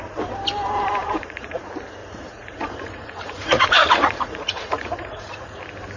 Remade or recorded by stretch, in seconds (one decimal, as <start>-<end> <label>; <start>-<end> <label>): 0.0-1.0 recorded; 1.0-1.6 remade; 1.6-2.0 recorded; 2.0-5.6 remade; 5.6-6.0 recorded